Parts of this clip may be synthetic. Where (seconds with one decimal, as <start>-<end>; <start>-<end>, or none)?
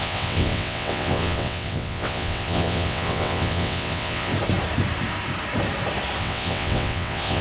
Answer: 0.0-4.3; 6.2-7.4